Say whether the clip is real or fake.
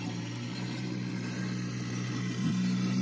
real